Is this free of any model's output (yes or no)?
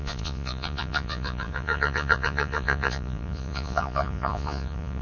no